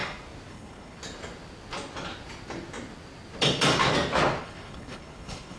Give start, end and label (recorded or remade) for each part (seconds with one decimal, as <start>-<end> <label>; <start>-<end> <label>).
0.0-0.5 recorded; 0.5-1.0 remade; 1.0-4.4 recorded; 4.4-5.6 remade